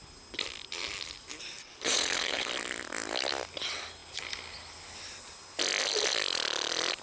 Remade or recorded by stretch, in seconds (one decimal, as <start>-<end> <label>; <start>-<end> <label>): 0.0-1.6 recorded; 1.6-2.5 remade; 2.5-7.0 recorded